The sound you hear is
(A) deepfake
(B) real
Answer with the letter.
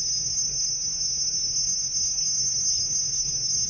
A